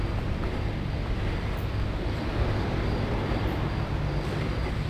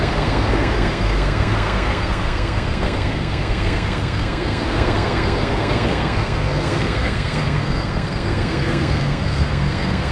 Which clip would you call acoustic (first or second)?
first